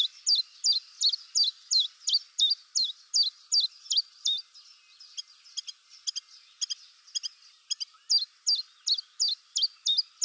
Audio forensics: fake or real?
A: real